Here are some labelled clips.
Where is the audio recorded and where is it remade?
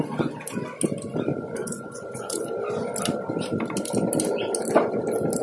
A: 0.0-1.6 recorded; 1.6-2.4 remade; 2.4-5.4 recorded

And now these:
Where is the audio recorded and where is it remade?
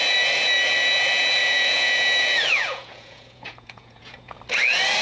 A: 0.0-1.4 recorded; 1.4-4.4 remade; 4.4-5.0 recorded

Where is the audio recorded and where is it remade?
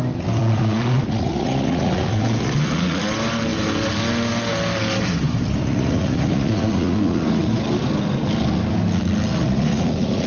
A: 0.0-0.4 recorded; 0.4-3.0 remade; 3.0-5.6 recorded; 5.6-7.5 remade; 7.5-9.3 recorded; 9.3-10.3 remade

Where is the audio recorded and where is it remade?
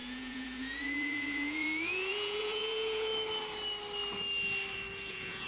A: 0.0-3.1 remade; 3.1-5.1 recorded; 5.1-5.5 remade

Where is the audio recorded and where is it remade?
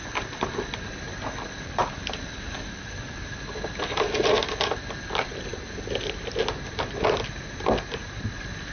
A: 0.0-8.7 recorded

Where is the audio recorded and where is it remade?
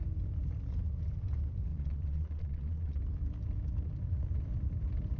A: 0.0-1.7 recorded; 1.7-3.0 remade; 3.0-5.2 recorded